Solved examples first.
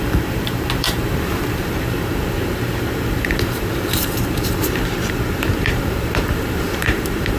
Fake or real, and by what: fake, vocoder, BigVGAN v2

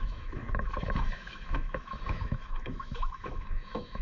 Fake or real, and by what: fake, autoencoder, DAC-VAE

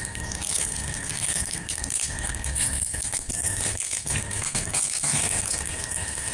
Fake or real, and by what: fake, codec, SNAC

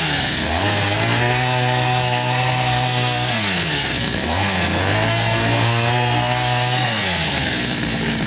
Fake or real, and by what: fake, codec, SNAC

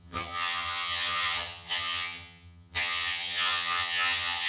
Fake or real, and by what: fake, vocoder, HiFi-GAN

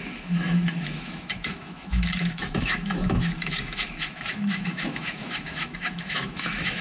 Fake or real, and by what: fake, autoencoder, DAC-VAE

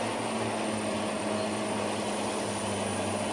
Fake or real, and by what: real